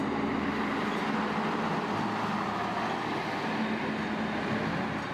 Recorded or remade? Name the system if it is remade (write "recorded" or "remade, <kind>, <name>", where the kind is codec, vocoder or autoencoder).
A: recorded